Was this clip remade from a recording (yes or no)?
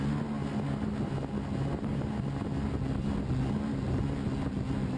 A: no